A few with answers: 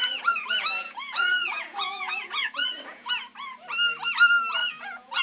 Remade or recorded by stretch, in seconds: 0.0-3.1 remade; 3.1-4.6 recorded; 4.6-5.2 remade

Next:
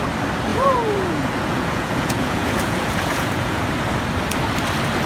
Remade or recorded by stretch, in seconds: 0.0-0.5 recorded; 0.5-3.6 remade; 3.6-5.1 recorded

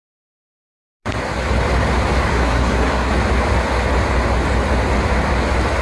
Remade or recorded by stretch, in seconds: 0.0-2.3 recorded; 2.3-3.1 remade; 3.1-5.8 recorded

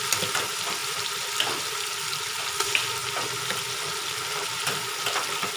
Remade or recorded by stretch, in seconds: 0.0-0.8 recorded; 0.8-2.5 remade; 2.5-5.6 recorded

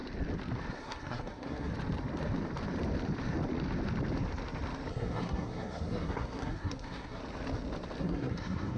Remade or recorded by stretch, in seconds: 0.0-0.7 recorded; 0.7-1.7 remade; 1.7-4.9 recorded; 4.9-7.2 remade; 7.2-8.0 recorded; 8.0-8.8 remade